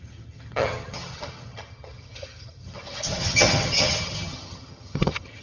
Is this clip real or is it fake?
fake